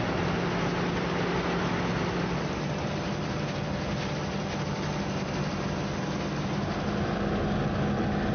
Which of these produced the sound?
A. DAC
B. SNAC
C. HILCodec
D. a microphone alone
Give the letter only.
D